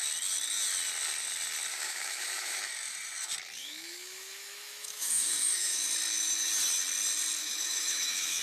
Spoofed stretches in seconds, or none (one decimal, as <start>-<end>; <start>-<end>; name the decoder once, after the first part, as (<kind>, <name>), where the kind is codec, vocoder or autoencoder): 1.7-2.7 (autoencoder, DAC-VAE); 3.6-5.9; 7.4-8.4